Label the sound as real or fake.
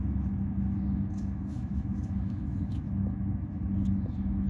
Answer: fake